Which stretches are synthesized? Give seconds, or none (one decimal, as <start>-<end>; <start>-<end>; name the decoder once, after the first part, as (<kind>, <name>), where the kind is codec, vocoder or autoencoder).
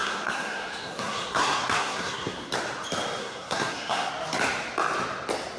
0.0-2.5 (codec, SNAC); 3.2-4.1